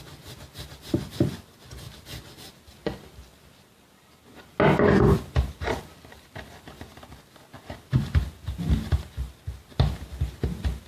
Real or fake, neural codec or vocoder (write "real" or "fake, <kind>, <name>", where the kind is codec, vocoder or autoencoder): real